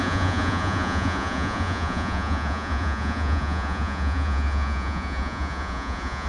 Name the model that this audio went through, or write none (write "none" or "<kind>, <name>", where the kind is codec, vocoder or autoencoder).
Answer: vocoder, Vocos